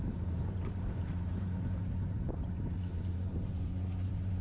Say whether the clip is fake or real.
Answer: fake